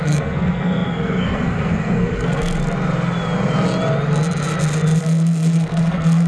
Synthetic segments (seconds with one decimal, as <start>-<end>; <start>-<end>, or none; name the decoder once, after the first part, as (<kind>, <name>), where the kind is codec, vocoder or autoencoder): 0.0-2.6 (codec, SNAC); 5.0-6.3